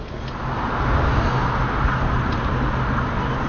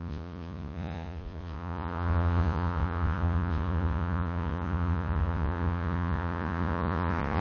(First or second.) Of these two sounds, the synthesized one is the second